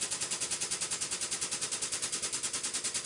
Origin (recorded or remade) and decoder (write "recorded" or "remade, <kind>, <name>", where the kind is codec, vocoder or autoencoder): recorded